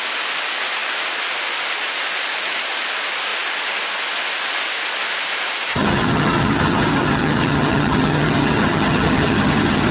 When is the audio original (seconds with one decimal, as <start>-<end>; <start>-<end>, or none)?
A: 0.0-5.7

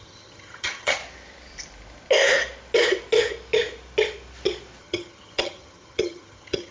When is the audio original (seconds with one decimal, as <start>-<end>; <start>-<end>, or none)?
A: 1.0-4.8

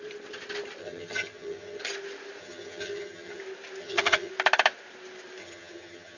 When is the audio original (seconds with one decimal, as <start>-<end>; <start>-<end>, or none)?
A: 0.0-0.8; 1.8-2.4; 3.4-3.8; 4.3-5.4

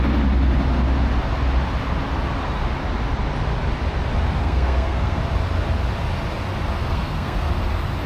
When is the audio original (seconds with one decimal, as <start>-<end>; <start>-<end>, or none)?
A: 0.0-4.4; 5.2-6.9; 7.5-8.1

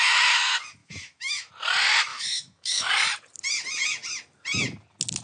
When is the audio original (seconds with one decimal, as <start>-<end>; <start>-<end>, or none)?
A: 0.0-0.8; 1.5-2.1; 2.9-5.2